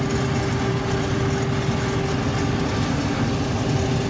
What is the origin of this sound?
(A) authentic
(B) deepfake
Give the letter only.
A